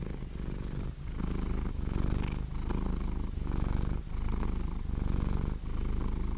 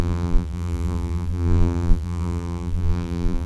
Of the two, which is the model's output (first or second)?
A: second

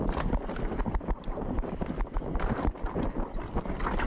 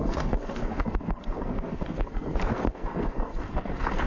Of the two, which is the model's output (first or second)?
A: second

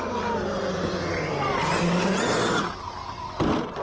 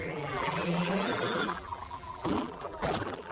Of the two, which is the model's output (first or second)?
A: second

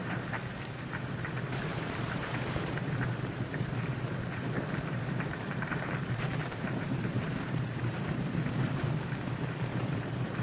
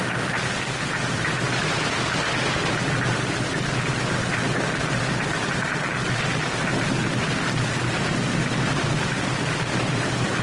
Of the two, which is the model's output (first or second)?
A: first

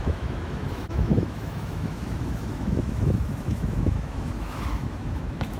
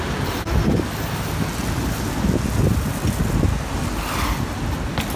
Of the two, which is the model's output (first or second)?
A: first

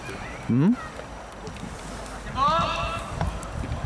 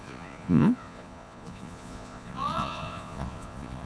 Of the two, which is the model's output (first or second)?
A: second